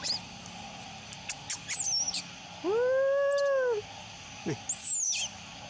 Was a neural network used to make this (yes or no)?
no